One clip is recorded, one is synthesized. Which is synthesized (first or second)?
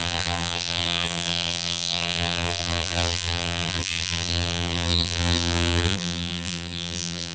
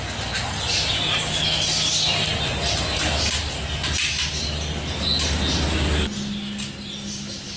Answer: first